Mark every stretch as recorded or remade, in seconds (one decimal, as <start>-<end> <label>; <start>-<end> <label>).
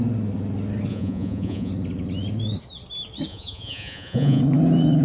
0.0-0.9 recorded; 0.9-1.7 remade; 1.7-3.3 recorded; 3.3-4.4 remade; 4.4-5.0 recorded